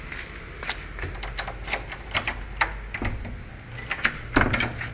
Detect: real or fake real